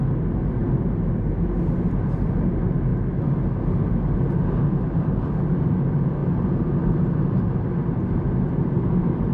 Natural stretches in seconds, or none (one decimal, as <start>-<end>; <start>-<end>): 0.0-9.3